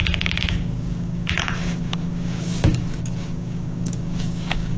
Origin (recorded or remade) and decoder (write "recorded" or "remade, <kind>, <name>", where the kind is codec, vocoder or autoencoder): remade, codec, DAC